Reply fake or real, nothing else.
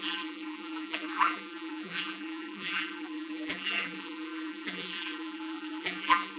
fake